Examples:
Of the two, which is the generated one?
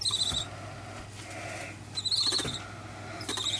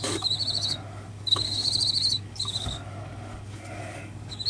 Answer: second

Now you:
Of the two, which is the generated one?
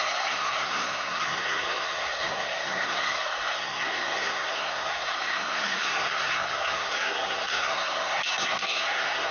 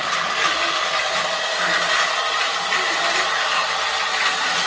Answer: first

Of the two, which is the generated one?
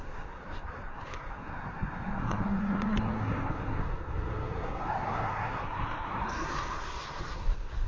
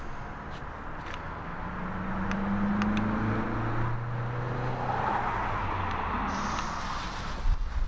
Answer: first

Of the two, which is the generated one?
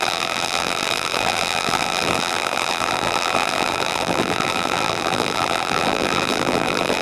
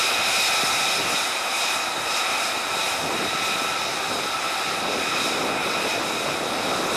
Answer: first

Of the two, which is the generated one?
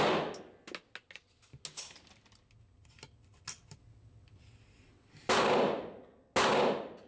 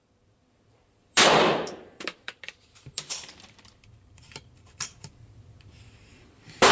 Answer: second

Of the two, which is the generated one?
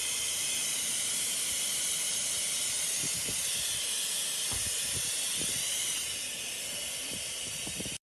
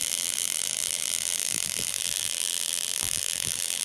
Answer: second